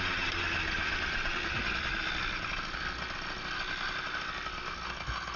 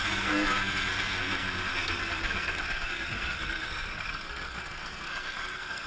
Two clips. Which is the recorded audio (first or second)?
first